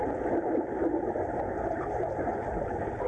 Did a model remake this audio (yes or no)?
no